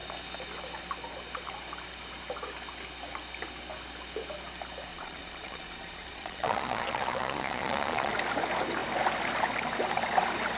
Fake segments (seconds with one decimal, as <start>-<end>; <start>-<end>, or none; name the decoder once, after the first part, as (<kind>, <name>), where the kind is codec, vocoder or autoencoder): 4.9-8.1 (vocoder, Vocos)